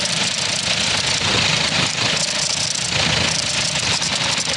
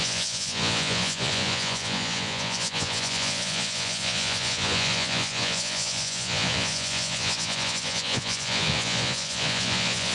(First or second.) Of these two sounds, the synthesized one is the second